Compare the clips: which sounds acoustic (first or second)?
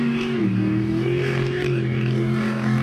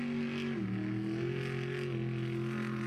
second